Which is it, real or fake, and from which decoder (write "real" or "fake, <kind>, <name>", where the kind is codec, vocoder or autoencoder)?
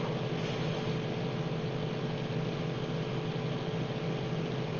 real